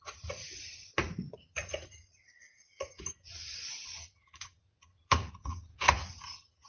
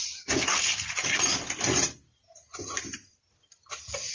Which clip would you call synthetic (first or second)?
first